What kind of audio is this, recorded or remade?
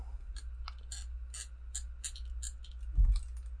recorded